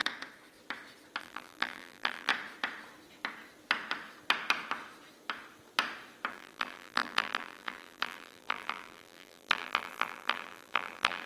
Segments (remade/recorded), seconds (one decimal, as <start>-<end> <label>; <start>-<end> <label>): 0.0-1.2 recorded; 1.2-2.3 remade; 2.3-6.3 recorded; 6.3-11.3 remade